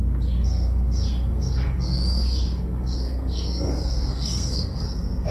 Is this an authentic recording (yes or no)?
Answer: no